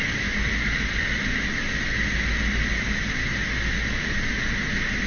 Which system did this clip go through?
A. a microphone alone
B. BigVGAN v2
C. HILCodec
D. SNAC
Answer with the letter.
A